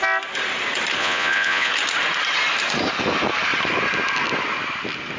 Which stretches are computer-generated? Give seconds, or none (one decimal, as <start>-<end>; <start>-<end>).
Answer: 1.0-1.7